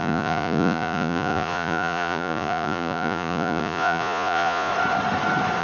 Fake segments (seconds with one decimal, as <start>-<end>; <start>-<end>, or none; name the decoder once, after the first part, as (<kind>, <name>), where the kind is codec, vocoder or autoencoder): 0.0-4.7 (vocoder, Vocos)